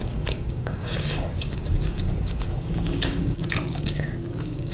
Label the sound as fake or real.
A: fake